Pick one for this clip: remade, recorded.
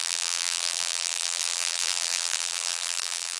remade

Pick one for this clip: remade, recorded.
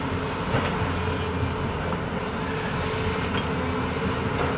recorded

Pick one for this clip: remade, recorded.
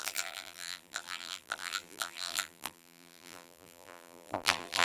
remade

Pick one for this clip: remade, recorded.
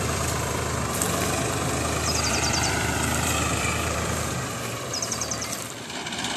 remade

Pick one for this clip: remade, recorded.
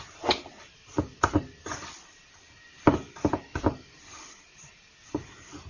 recorded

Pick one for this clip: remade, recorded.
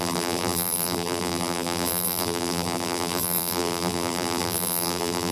remade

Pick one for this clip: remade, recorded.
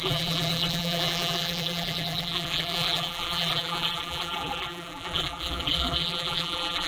remade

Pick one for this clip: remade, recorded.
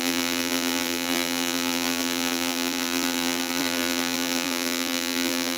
remade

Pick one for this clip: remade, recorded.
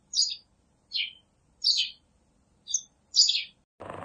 recorded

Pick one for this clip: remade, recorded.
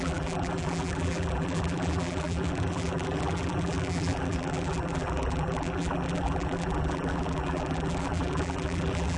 remade